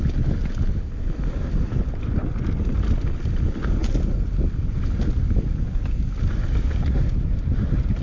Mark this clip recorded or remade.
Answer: recorded